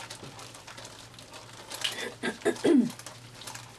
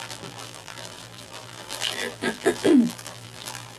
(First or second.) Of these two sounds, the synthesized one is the second